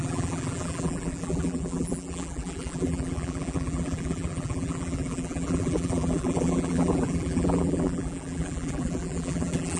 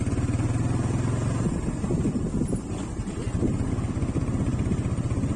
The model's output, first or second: first